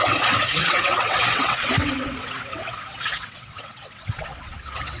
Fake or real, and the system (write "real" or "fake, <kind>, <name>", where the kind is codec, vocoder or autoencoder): fake, vocoder, WaveNeXt